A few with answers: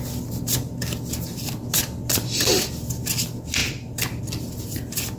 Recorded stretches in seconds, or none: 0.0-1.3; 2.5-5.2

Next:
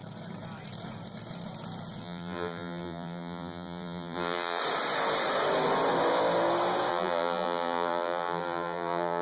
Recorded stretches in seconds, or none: 0.0-2.0; 4.6-6.9

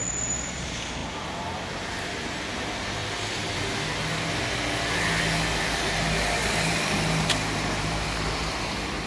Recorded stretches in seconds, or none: 1.0-1.9; 3.0-5.6

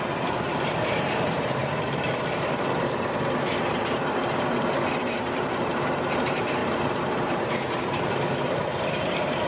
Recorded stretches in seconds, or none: none

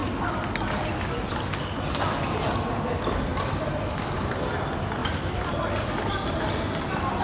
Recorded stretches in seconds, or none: 0.0-3.3; 4.4-5.0; 6.3-7.2

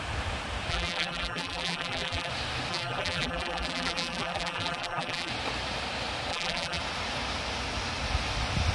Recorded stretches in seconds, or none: 0.0-0.7; 2.3-2.7; 5.3-6.3; 6.8-8.7

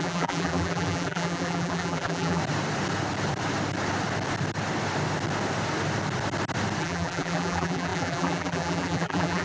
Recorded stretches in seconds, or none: 2.4-6.8

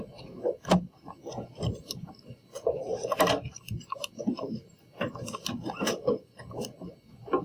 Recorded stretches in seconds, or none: 0.0-7.4